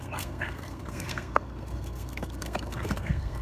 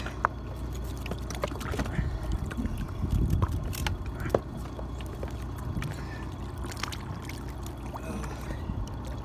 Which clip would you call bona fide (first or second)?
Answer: second